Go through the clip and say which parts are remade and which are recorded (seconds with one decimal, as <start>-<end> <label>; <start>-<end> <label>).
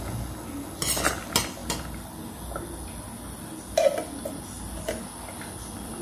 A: 0.0-6.0 recorded